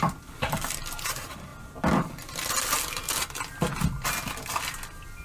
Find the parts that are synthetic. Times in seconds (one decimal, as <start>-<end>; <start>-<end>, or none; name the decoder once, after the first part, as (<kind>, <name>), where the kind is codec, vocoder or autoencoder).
none